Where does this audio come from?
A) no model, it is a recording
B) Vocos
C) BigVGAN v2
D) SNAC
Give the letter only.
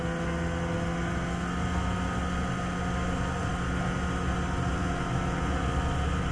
A